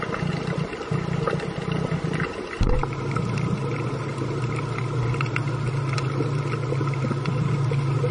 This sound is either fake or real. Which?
real